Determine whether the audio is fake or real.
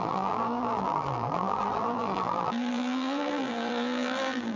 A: fake